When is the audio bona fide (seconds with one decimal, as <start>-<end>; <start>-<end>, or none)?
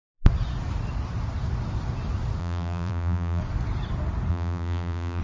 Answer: 0.0-2.4; 3.4-4.3